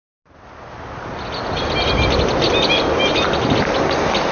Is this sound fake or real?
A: real